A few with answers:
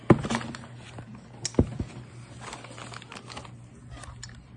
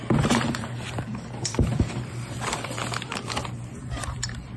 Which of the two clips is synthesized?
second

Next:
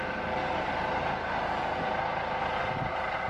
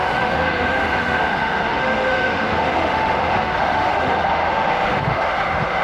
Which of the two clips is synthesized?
second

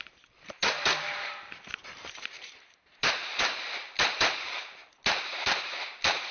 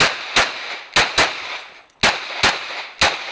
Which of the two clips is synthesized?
first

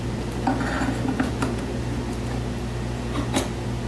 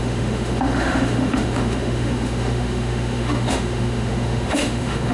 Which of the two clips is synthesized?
second